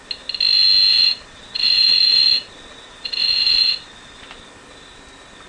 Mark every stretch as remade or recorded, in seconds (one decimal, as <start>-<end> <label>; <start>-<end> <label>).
0.0-0.9 recorded; 0.9-4.2 remade; 4.2-5.5 recorded